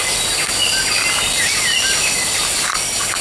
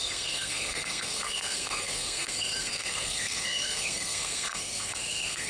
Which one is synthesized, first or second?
second